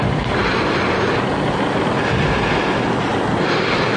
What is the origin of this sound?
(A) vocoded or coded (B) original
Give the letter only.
B